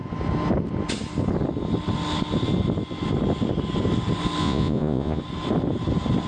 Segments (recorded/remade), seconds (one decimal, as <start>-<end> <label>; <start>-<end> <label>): 0.0-4.4 recorded; 4.4-5.2 remade; 5.2-6.3 recorded